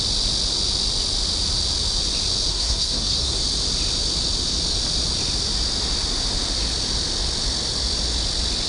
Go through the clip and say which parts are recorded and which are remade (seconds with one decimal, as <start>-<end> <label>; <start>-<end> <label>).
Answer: 0.0-2.5 recorded; 2.5-3.4 remade; 3.4-8.7 recorded

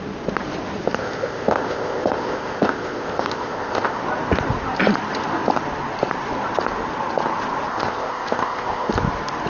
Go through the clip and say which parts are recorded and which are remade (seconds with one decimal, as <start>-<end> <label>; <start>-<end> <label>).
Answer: 0.0-1.0 recorded; 1.0-4.0 remade; 4.0-7.7 recorded; 7.7-8.9 remade; 8.9-9.5 recorded

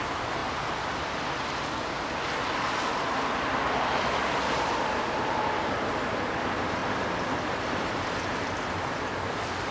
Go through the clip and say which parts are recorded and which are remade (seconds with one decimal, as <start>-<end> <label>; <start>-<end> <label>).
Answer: 0.0-9.7 recorded

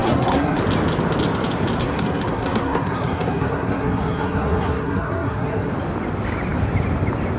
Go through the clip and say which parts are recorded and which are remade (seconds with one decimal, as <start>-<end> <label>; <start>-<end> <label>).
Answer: 0.0-0.6 remade; 0.6-1.8 recorded; 1.8-5.7 remade; 5.7-7.4 recorded

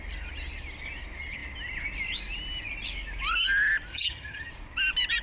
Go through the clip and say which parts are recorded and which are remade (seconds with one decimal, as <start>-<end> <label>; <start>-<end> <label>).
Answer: 0.0-3.9 recorded; 3.9-4.5 remade; 4.5-5.2 recorded